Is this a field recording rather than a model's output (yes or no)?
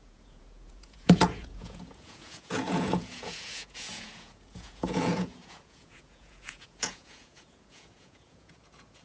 no